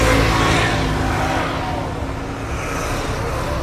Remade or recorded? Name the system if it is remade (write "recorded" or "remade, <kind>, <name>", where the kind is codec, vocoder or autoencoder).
recorded